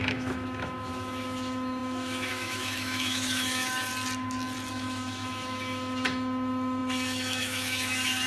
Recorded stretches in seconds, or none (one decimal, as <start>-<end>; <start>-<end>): 3.9-4.7